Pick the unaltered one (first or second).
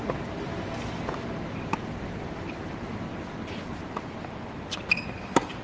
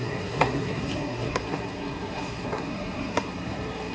first